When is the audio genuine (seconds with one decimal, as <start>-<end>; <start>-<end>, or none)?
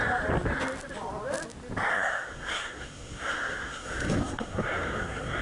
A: 0.0-1.9